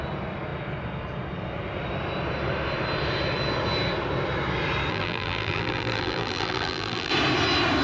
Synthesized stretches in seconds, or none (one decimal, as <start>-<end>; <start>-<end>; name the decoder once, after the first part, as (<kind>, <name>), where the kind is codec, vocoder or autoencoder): 4.9-7.1 (vocoder, BigVGAN v2)